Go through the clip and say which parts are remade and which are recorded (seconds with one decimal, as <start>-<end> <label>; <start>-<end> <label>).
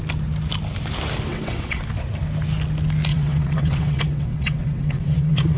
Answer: 0.0-1.3 recorded; 1.3-1.8 remade; 1.8-3.1 recorded; 3.1-5.6 remade